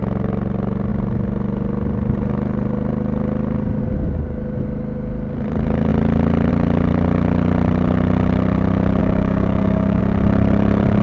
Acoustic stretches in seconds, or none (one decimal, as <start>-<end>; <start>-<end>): 0.0-9.0; 10.0-11.0